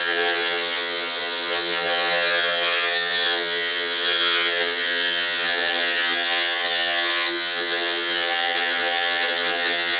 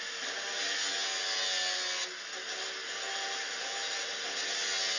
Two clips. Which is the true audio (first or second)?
second